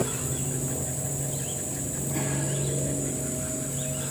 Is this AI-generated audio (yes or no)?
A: no